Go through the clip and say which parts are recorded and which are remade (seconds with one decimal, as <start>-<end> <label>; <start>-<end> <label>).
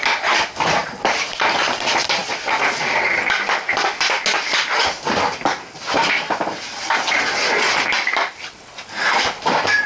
0.0-9.9 recorded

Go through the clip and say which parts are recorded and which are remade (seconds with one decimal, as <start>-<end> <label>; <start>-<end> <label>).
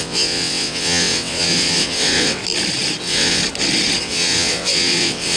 0.0-2.4 remade; 2.4-3.0 recorded; 3.0-3.4 remade; 3.4-4.0 recorded; 4.0-5.4 remade